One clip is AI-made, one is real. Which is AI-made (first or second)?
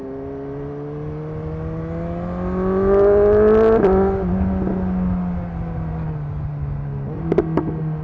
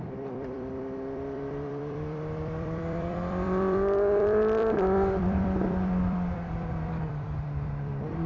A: second